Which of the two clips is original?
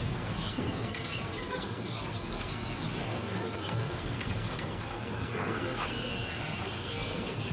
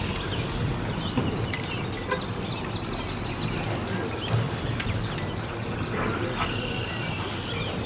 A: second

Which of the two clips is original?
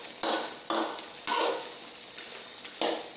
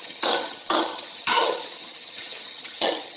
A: first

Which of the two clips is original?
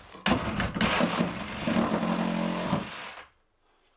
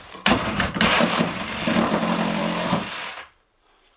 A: first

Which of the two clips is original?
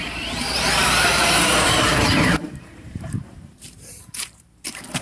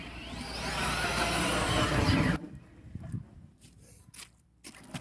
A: second